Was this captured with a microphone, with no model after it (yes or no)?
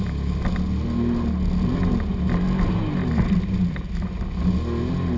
yes